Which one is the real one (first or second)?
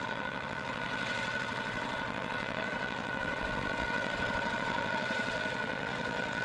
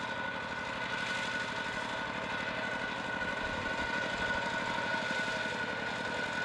second